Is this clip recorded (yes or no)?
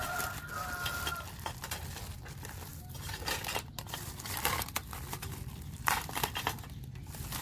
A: yes